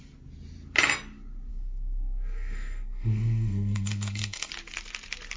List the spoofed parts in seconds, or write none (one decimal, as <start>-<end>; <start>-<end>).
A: 1.5-4.5